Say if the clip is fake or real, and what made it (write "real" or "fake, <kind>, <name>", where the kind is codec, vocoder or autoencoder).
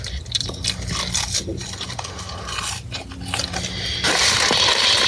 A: real